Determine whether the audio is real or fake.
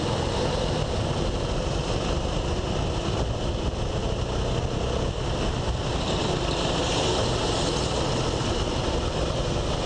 real